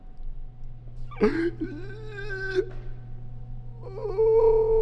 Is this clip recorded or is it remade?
recorded